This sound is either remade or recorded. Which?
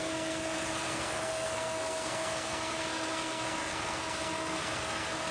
remade